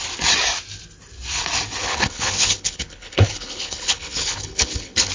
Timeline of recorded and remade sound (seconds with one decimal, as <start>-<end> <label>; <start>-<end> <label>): 0.0-1.8 recorded; 1.8-5.1 remade